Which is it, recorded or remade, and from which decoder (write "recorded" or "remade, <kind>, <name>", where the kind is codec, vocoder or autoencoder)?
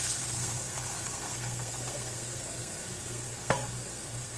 remade, codec, SNAC